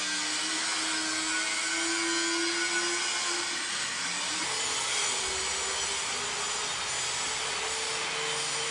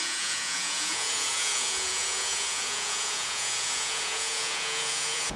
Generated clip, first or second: second